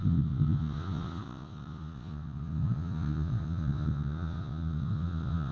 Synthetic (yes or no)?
yes